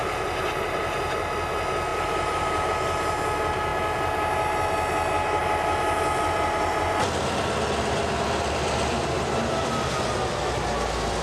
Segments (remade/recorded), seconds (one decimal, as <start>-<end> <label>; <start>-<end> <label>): 0.0-1.9 recorded; 1.9-2.7 remade; 2.7-11.2 recorded